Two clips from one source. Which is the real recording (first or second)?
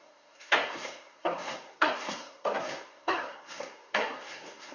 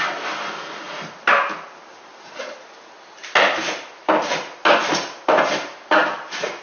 second